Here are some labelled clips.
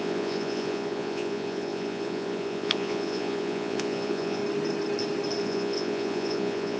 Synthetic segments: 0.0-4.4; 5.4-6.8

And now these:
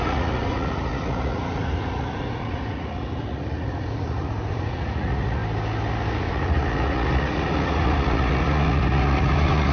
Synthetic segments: 0.0-5.4; 6.2-9.7

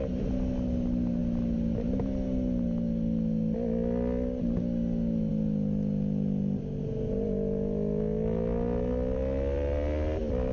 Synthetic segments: none

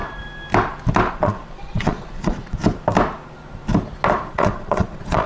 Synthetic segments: 1.1-2.6; 4.3-5.3